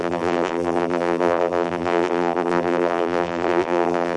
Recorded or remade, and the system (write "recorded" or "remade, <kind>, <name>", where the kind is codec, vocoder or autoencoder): remade, vocoder, BigVGAN v2